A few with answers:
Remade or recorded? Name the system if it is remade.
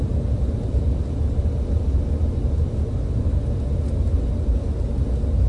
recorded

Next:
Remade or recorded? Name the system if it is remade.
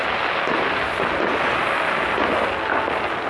recorded